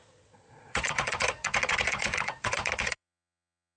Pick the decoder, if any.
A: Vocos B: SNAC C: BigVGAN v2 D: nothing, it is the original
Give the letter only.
A